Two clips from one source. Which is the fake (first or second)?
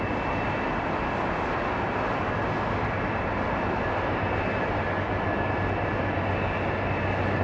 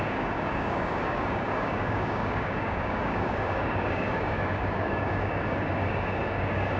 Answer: second